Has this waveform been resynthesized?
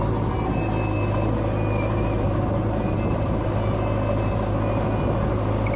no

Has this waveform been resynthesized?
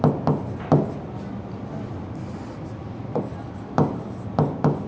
no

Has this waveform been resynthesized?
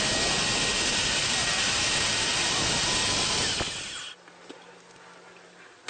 no